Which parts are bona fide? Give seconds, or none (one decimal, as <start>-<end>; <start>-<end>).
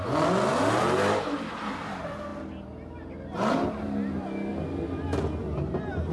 0.0-6.1